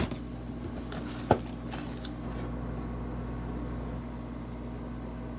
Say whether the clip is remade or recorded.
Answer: recorded